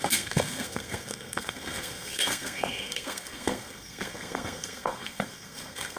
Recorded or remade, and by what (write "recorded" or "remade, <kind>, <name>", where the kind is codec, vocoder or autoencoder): remade, codec, SNAC